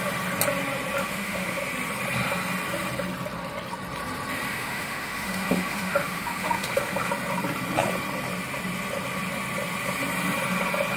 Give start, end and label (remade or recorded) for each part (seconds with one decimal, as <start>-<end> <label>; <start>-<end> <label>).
0.0-1.0 recorded; 1.0-1.6 remade; 1.6-4.5 recorded; 4.5-7.1 remade; 7.1-11.0 recorded